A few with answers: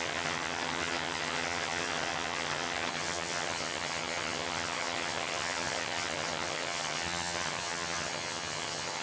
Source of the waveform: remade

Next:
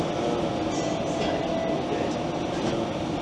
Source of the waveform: recorded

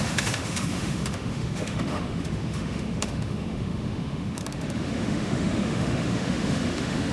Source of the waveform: remade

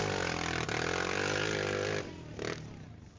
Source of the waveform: recorded